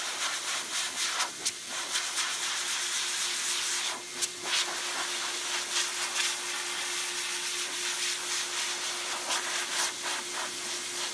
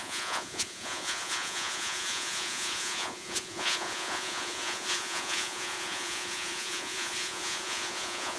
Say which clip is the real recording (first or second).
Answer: first